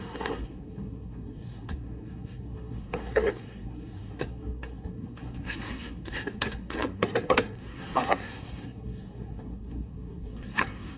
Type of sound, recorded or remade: remade